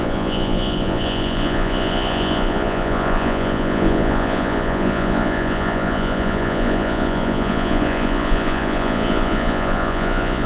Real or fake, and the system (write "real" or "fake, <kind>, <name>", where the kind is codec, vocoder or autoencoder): fake, vocoder, Vocos